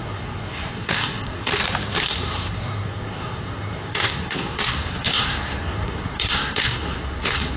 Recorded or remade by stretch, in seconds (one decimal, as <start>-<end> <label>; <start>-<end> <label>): 0.0-1.5 remade; 1.5-2.0 recorded; 2.0-7.6 remade